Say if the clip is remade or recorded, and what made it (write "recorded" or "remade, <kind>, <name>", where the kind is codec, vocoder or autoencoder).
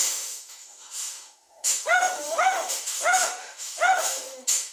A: remade, autoencoder, DAC-VAE